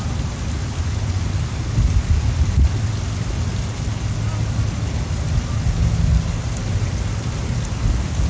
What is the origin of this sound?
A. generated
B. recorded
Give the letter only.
B